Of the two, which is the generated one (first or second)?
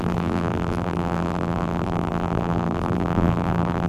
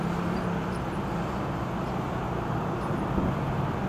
first